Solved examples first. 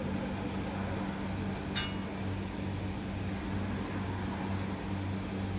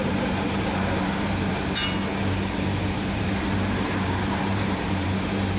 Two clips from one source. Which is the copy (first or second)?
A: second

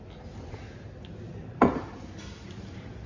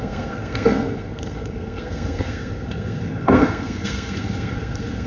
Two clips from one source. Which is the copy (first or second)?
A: second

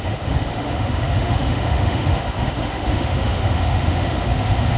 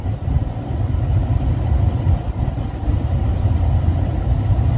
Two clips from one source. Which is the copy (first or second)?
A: first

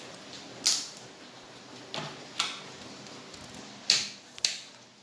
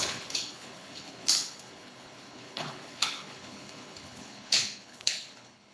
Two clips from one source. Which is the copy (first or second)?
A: second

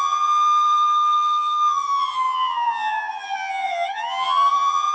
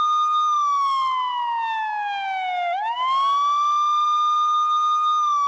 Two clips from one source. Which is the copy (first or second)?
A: first